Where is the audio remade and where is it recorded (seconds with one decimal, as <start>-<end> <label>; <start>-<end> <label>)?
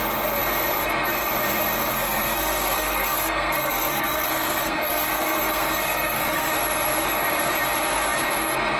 0.0-1.9 recorded; 1.9-6.5 remade; 6.5-8.8 recorded